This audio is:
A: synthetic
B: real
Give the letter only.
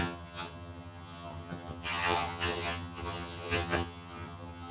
A